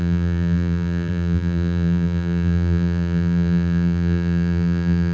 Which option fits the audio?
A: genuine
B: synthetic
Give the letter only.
B